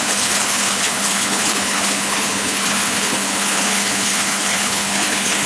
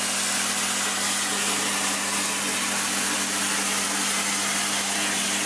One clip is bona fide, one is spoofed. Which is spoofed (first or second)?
first